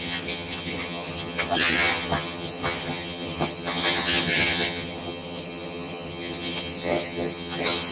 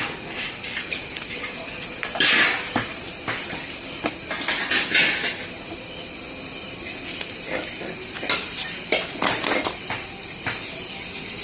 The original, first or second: second